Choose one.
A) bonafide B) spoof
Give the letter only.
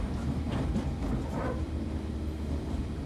B